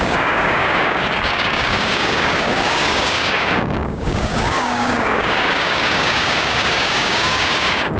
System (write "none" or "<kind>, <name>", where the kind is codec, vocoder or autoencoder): codec, DAC